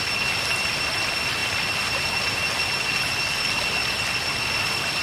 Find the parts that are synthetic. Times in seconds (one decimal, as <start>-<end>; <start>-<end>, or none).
3.8-4.3